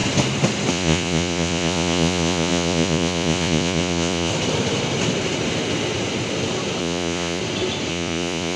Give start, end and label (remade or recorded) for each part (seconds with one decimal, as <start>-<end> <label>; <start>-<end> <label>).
0.0-0.7 recorded; 0.7-4.3 remade; 4.3-6.8 recorded; 6.8-7.4 remade; 7.4-7.9 recorded; 7.9-8.6 remade